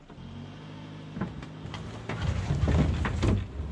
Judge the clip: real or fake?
real